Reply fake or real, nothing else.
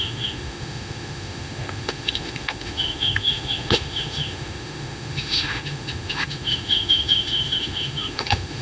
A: fake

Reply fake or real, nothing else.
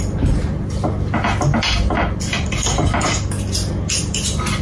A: real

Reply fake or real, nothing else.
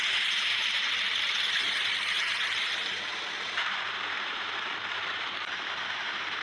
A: fake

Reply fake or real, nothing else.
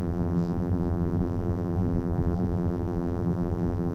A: fake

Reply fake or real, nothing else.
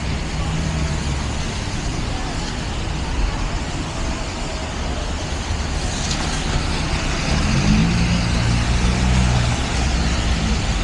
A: real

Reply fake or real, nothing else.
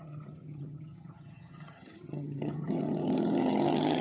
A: fake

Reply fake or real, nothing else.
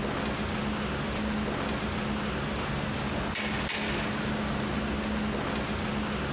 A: real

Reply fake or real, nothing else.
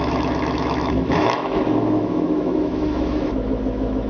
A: fake